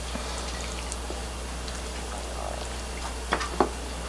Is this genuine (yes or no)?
yes